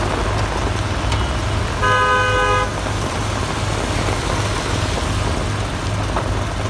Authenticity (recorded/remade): recorded